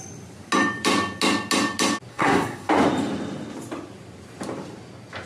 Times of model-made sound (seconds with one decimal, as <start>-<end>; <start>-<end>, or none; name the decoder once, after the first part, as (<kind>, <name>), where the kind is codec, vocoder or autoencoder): 2.1-2.7 (codec, SNAC)